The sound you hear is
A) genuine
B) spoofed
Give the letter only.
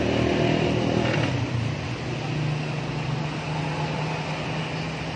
A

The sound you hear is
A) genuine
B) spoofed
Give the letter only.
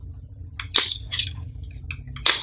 A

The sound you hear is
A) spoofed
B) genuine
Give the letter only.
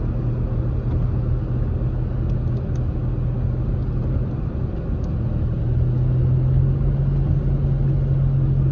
B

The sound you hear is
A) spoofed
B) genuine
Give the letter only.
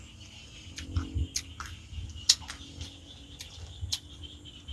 B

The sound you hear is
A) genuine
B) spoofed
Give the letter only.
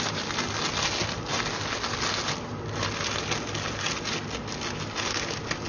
A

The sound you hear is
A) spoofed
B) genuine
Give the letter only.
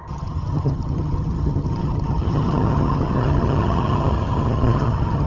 A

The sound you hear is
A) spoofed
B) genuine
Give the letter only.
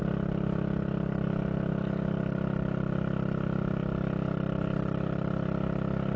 B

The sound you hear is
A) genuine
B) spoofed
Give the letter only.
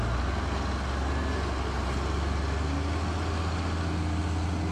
A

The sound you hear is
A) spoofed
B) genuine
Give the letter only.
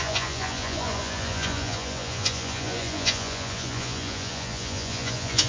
A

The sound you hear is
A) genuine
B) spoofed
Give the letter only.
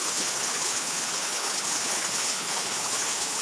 B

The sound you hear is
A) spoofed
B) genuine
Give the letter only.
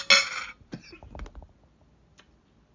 B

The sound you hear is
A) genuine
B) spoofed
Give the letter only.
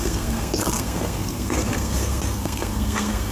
B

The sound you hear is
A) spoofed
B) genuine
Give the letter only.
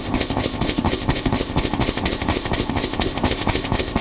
A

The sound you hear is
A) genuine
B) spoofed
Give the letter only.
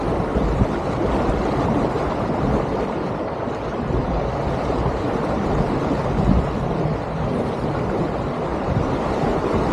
A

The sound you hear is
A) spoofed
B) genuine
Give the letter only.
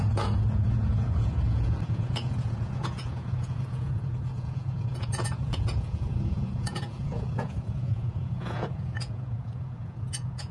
A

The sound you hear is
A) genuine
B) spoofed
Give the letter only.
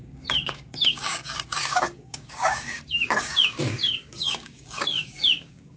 B